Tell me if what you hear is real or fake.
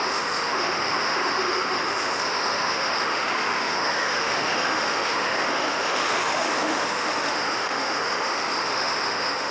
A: fake